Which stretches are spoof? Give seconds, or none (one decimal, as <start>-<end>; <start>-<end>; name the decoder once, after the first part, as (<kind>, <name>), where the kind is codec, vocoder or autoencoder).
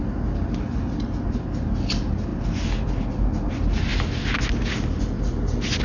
none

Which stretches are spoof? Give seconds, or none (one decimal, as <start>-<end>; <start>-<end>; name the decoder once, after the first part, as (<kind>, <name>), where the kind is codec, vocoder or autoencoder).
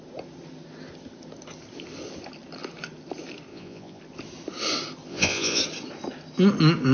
3.5-4.0 (vocoder, Vocos); 5.1-5.6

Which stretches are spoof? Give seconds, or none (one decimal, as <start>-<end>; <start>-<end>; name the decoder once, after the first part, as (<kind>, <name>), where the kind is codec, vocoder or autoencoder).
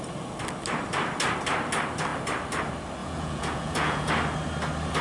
3.0-4.1 (vocoder, Vocos)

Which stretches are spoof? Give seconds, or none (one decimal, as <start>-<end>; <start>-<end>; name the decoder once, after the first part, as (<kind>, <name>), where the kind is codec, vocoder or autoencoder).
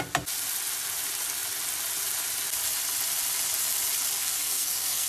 4.2-5.1 (codec, SNAC)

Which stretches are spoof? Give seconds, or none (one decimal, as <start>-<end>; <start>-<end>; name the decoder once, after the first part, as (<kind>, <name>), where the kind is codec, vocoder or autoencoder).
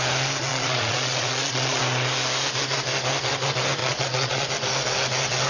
0.5-1.8 (vocoder, Vocos); 3.8-4.5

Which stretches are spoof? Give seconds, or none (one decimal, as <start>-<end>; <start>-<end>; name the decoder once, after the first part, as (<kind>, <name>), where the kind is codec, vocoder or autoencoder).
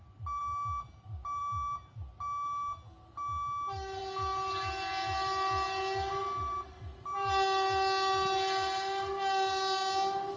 none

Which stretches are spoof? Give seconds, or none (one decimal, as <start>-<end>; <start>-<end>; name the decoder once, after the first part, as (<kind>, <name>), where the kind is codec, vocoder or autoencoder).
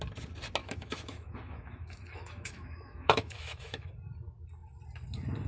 0.6-3.9 (autoencoder, DAC-VAE)